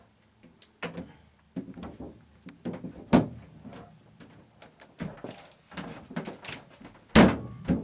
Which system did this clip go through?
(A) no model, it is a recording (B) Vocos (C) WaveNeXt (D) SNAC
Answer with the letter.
A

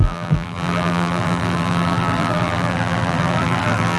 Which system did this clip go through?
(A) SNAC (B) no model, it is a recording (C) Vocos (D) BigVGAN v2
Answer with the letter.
D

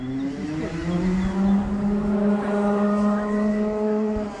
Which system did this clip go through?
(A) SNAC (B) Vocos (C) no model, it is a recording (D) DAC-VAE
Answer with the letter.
C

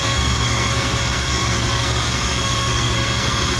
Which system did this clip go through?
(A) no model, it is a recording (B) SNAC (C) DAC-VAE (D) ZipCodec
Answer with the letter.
B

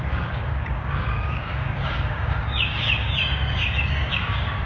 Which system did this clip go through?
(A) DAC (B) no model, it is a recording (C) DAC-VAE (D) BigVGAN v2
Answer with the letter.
A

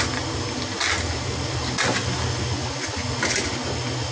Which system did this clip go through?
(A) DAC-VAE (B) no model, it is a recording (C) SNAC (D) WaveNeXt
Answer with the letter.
B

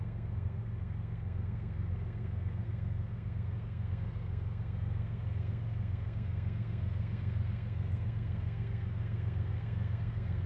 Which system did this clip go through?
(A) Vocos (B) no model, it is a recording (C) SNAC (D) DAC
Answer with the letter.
C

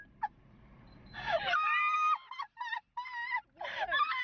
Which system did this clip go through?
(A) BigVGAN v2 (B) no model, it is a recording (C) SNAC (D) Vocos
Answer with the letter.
B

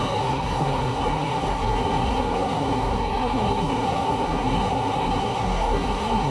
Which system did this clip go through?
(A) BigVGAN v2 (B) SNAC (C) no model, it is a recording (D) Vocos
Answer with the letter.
B